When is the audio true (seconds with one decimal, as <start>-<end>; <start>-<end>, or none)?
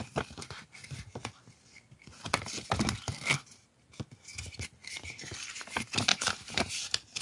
0.0-6.1; 6.7-7.2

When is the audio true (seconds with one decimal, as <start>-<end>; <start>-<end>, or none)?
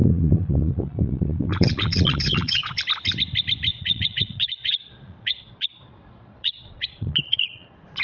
2.8-3.7